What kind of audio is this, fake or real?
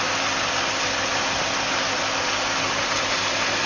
real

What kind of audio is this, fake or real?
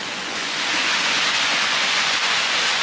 fake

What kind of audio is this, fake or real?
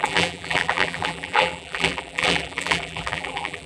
fake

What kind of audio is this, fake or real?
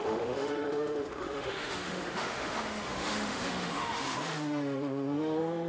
fake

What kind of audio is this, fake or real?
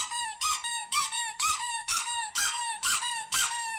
fake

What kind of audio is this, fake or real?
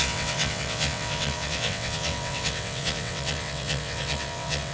fake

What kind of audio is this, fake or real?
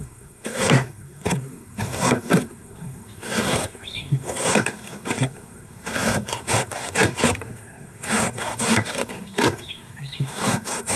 fake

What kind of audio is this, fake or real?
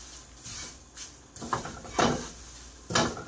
real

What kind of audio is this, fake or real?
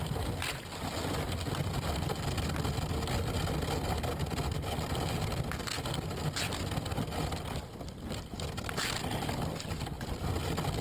real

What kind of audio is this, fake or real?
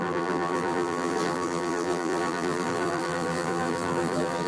fake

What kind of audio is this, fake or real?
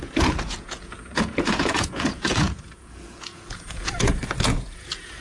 fake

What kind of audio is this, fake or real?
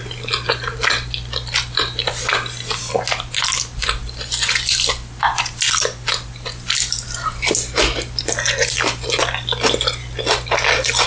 real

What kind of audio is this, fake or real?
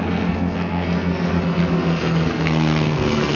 fake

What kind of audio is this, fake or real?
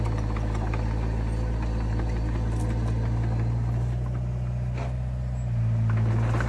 real